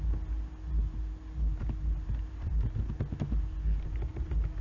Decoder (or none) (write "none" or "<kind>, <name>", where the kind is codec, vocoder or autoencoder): none